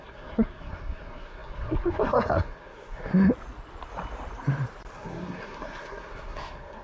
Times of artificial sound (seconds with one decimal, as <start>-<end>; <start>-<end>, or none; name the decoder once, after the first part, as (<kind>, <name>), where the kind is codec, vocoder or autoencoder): 0.0-3.1 (codec, SNAC); 4.9-6.8